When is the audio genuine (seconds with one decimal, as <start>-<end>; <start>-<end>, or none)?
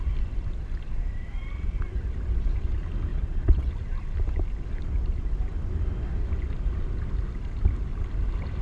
0.0-3.1; 3.7-8.6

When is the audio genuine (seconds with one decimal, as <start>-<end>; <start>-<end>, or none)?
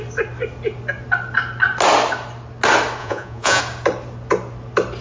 0.0-3.0; 3.6-5.0